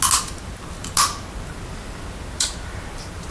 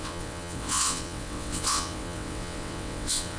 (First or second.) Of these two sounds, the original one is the first